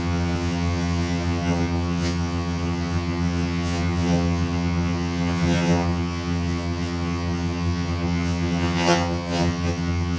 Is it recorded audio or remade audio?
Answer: remade